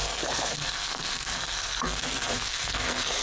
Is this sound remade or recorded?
remade